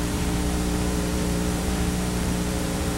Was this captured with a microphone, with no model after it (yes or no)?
no